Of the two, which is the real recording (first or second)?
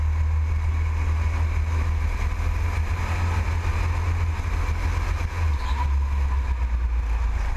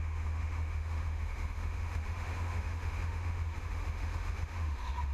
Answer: first